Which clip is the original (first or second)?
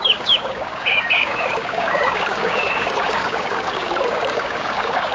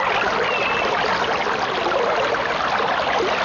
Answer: second